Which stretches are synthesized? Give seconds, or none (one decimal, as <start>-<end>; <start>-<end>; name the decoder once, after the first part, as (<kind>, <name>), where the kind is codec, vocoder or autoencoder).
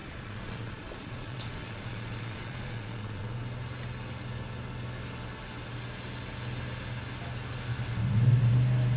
0.0-3.4 (vocoder, Vocos)